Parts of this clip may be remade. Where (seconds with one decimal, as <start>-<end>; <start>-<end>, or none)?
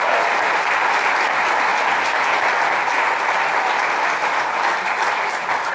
none